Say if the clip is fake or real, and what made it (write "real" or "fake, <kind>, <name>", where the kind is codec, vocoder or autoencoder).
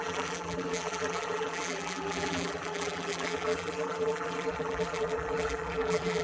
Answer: fake, vocoder, BigVGAN v2